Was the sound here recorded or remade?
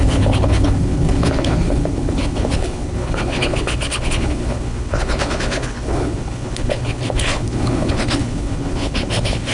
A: remade